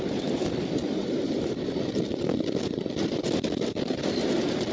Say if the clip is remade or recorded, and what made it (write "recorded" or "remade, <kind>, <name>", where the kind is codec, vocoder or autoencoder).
recorded